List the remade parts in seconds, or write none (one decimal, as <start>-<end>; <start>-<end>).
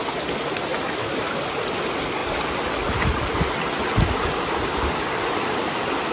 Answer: none